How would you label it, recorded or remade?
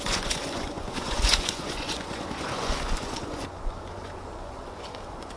remade